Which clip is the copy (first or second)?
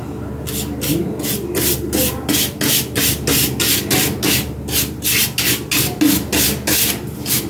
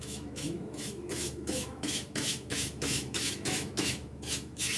second